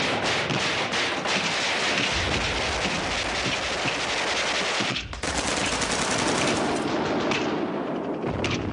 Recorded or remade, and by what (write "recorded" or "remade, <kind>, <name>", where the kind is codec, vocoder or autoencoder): recorded